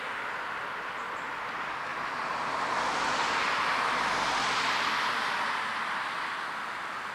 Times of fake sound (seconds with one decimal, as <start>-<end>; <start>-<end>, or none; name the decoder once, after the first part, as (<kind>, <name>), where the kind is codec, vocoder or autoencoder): none